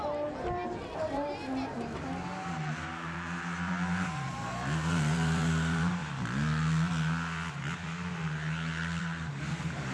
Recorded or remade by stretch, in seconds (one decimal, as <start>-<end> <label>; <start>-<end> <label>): 0.0-1.4 remade; 1.4-2.4 recorded; 2.4-6.0 remade; 6.0-9.0 recorded; 9.0-9.9 remade